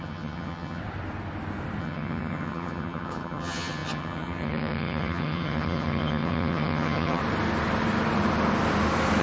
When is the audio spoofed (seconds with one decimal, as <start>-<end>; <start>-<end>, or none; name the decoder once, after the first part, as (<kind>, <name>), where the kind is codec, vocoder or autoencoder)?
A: 0.0-0.8 (vocoder, HiFi-GAN); 1.8-7.2